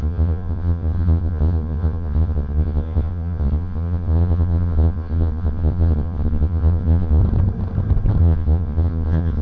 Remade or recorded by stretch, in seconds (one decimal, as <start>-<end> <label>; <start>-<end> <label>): 0.0-7.2 remade; 7.2-8.2 recorded; 8.2-9.4 remade